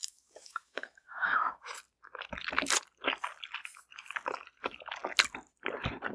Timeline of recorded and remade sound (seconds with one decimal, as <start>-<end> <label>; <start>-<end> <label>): 0.0-1.7 remade; 1.7-6.1 recorded